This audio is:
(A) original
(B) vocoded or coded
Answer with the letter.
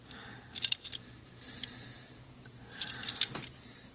A